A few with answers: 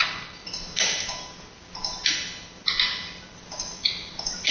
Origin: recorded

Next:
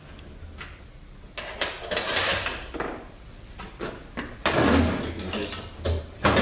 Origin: recorded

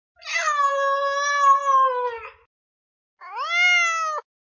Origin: recorded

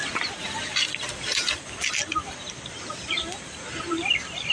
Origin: recorded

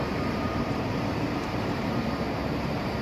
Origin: remade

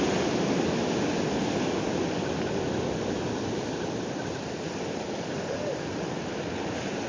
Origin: recorded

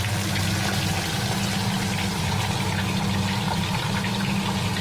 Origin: recorded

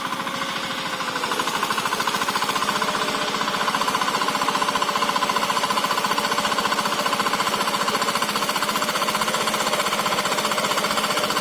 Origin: recorded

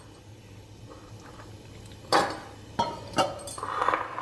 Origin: recorded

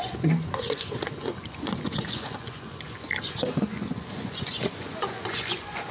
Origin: remade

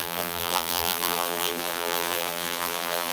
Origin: remade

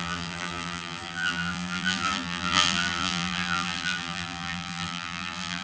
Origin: remade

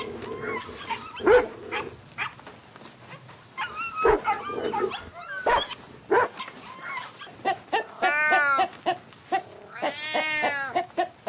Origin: recorded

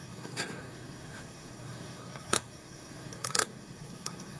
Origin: remade